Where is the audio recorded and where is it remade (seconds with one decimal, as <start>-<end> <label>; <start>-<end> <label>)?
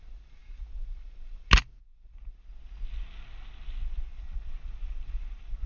0.0-5.7 recorded